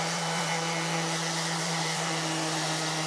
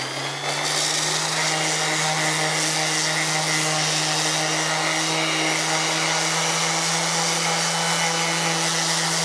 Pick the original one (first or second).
second